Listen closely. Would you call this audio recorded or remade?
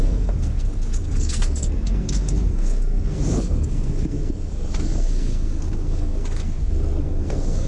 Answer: remade